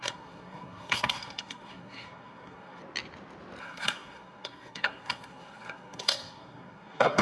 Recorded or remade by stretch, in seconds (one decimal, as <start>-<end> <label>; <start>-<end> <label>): 0.0-2.8 remade; 2.8-3.6 recorded; 3.6-7.2 remade